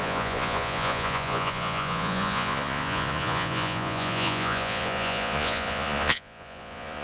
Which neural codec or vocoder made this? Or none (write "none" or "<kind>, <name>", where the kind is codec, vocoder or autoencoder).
vocoder, Vocos